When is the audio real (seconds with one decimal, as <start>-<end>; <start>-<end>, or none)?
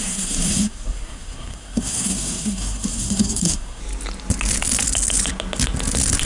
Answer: 3.8-6.3